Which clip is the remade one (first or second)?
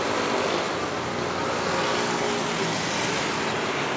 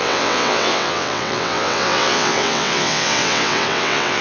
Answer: second